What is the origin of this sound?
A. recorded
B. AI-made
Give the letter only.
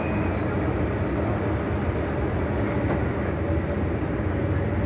A